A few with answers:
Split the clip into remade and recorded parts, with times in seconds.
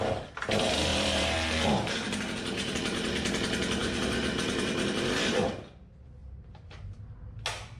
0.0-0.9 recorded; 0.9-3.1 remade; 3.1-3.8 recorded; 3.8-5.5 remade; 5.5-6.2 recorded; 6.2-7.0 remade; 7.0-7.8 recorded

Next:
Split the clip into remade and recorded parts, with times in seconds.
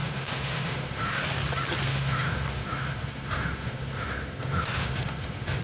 0.0-1.2 remade; 1.2-1.9 recorded; 1.9-5.6 remade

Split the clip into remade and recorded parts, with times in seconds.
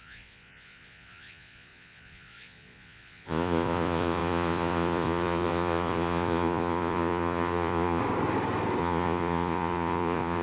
0.0-8.0 remade; 8.0-8.8 recorded; 8.8-10.4 remade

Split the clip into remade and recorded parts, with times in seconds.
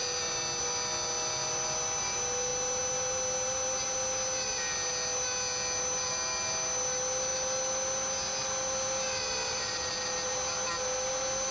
0.0-11.5 recorded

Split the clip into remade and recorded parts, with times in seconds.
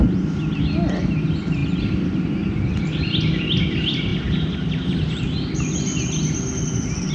0.0-7.1 recorded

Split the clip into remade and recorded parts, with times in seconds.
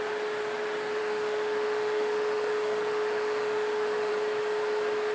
0.0-1.0 recorded; 1.0-4.1 remade; 4.1-5.1 recorded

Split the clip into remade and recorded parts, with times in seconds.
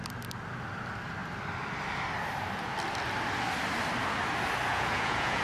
0.0-4.7 recorded; 4.7-5.4 remade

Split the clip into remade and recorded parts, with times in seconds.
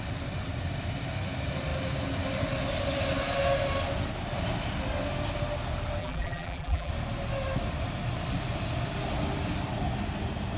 0.0-6.0 recorded; 6.0-6.9 remade; 6.9-10.6 recorded